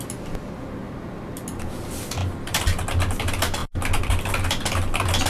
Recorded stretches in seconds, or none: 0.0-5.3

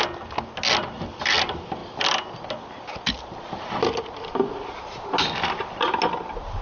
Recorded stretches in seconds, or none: 0.0-6.6

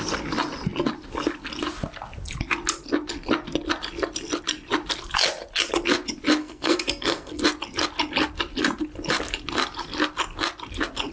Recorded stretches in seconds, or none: 0.0-6.4; 7.4-11.1

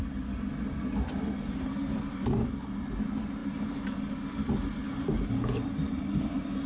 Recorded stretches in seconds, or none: 0.0-6.7

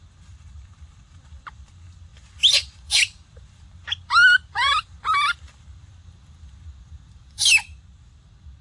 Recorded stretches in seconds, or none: 7.5-8.6

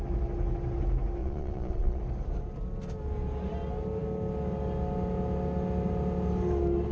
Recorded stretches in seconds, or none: 0.0-1.2; 2.0-6.9